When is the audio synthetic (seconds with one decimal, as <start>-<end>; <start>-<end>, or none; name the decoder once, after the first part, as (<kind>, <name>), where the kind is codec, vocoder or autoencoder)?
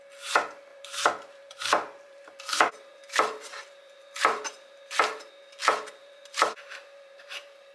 0.7-5.3 (vocoder, BigVGAN v2); 6.0-7.7